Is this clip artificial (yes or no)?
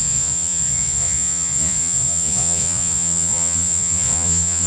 yes